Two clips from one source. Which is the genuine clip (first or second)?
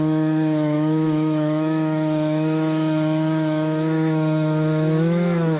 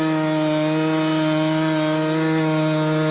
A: second